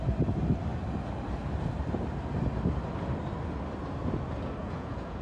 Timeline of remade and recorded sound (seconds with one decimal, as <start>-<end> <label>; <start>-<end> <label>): 0.0-4.6 recorded; 4.6-5.2 remade